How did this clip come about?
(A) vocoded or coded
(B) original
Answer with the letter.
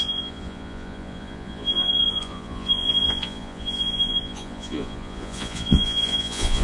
A